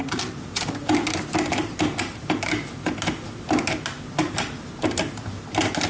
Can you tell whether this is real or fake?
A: real